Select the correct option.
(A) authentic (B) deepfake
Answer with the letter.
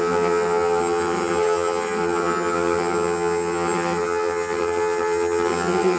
B